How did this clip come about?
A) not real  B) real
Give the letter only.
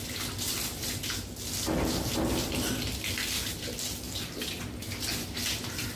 B